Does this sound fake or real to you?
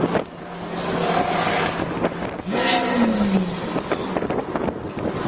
real